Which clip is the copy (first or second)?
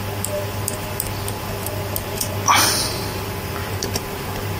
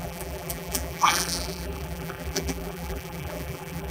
second